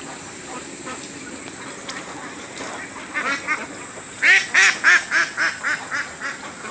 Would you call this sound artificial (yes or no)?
no